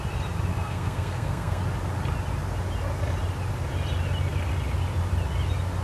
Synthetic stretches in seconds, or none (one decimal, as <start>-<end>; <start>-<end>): 0.5-1.6